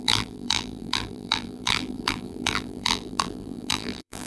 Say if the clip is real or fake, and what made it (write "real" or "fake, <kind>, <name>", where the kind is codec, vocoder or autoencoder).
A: fake, vocoder, BigVGAN v2